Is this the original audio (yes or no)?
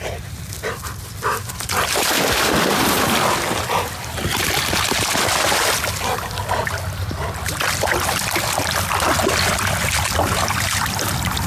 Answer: yes